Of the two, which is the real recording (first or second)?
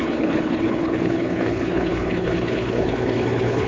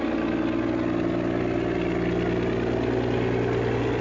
second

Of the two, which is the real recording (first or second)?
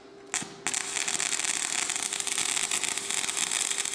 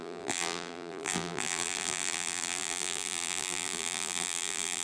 first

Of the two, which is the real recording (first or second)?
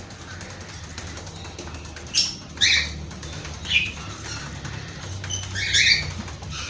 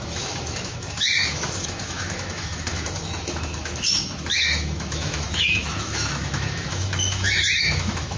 first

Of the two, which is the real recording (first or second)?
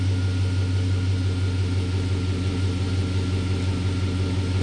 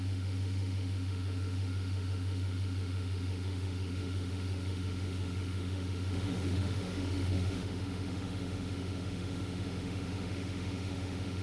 first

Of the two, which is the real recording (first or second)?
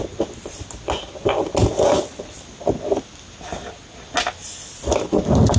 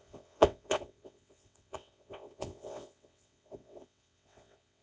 first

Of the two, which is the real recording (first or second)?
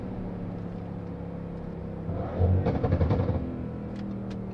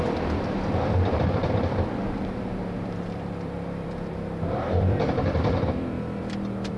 first